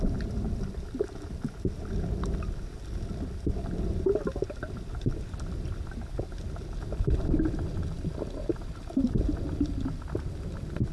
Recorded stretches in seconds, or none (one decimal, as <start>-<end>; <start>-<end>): 0.0-10.9

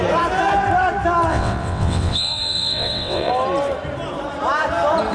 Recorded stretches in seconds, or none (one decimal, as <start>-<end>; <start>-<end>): 0.0-1.3; 3.3-5.1

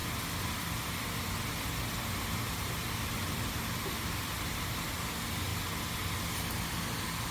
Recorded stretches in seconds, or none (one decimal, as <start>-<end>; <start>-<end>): 0.0-7.3

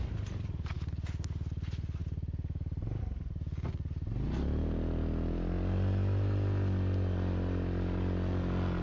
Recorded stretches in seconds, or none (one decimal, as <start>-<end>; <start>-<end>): 0.0-8.8